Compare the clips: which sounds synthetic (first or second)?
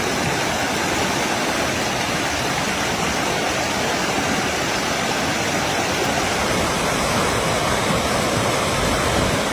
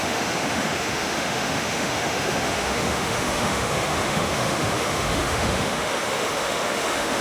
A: second